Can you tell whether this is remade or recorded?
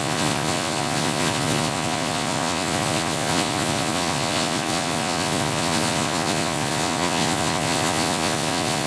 remade